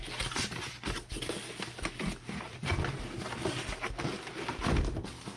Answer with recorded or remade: recorded